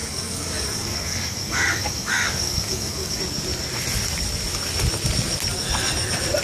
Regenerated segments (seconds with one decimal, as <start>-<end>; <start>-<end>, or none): 0.0-3.2

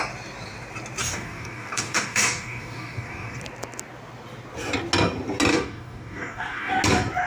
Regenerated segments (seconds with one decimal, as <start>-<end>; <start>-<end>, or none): 1.0-3.4; 5.5-6.7

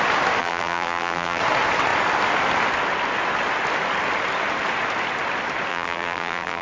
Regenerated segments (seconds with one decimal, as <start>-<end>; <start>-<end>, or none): 0.4-1.4; 5.7-6.6

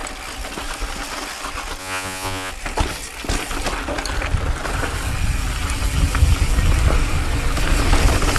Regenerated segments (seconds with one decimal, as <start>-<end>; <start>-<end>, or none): 1.8-2.5